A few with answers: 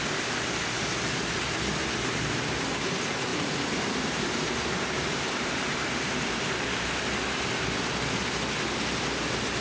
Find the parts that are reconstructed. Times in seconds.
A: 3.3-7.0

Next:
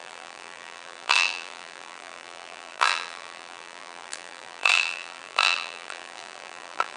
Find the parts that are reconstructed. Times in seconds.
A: 0.0-7.0

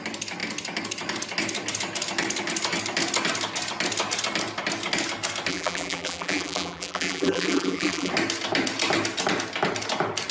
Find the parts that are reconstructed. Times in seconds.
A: 5.5-8.1

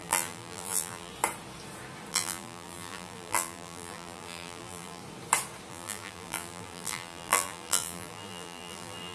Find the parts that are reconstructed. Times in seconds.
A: 0.0-1.1; 2.1-5.0; 5.7-9.1

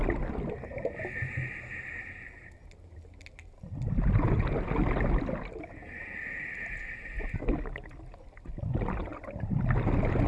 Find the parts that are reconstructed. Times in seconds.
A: 5.8-6.8; 9.1-10.3